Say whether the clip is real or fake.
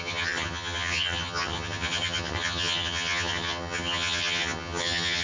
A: fake